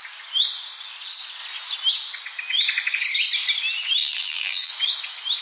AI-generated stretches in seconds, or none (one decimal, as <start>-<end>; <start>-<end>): 4.0-4.7